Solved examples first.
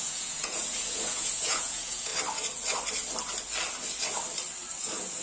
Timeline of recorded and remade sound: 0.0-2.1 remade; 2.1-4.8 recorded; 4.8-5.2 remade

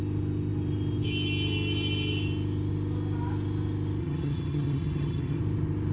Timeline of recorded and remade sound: 0.0-4.0 recorded; 4.0-5.4 remade; 5.4-5.9 recorded